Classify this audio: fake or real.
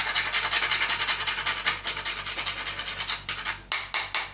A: real